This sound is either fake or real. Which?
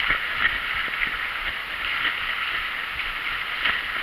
real